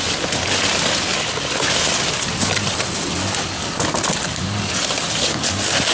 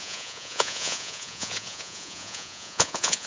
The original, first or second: first